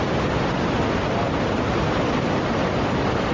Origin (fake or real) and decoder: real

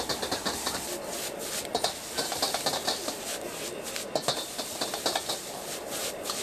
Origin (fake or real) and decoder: real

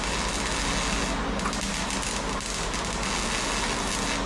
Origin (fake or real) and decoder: real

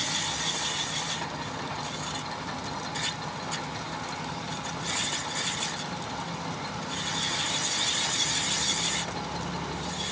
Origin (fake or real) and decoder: real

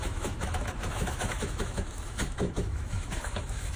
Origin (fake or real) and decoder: fake, autoencoder, DAC-VAE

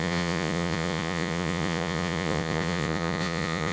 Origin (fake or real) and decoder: fake, vocoder, Vocos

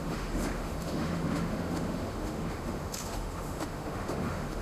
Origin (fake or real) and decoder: fake, autoencoder, DAC-VAE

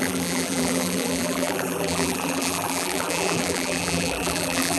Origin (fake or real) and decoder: fake, vocoder, BigVGAN v2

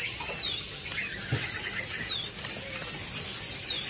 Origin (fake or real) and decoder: real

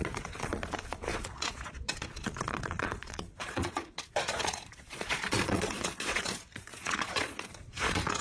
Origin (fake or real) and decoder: fake, vocoder, Vocos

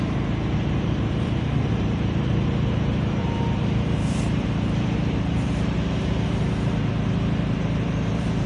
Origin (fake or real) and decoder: fake, vocoder, BigVGAN v2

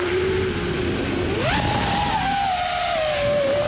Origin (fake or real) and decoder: real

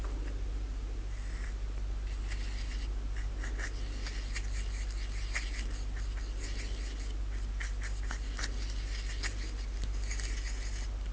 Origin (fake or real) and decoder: real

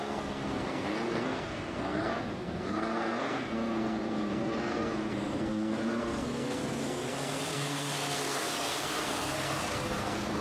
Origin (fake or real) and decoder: fake, codec, SNAC